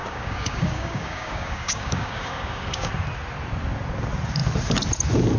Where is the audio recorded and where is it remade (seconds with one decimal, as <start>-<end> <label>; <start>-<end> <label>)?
0.0-2.9 remade; 2.9-5.4 recorded